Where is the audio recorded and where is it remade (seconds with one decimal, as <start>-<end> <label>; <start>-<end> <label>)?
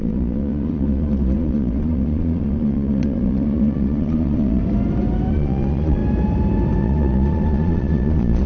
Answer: 0.0-4.6 remade; 4.6-5.3 recorded; 5.3-6.0 remade; 6.0-6.8 recorded; 6.8-8.5 remade